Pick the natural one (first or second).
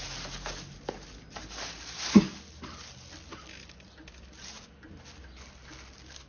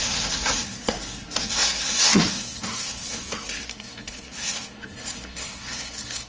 first